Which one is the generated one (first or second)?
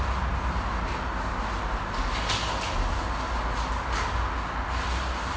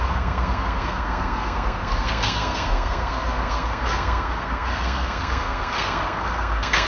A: second